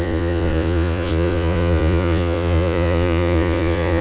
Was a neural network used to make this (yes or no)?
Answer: yes